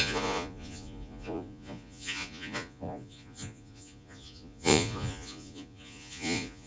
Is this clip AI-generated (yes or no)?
yes